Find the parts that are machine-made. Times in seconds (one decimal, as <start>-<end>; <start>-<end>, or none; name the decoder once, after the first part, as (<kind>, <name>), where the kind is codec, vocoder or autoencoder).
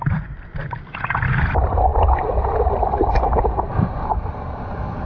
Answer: none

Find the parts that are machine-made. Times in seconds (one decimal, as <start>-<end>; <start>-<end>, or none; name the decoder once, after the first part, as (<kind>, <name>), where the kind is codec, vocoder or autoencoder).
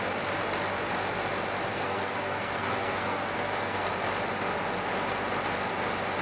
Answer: 1.7-3.9 (codec, SNAC)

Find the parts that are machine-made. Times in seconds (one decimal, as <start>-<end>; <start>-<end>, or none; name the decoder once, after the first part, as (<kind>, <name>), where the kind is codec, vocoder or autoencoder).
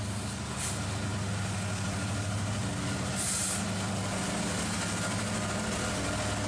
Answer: none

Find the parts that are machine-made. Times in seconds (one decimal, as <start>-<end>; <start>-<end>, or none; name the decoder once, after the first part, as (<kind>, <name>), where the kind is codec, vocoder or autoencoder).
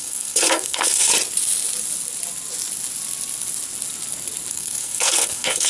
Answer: 0.0-1.1 (codec, SNAC); 4.5-5.7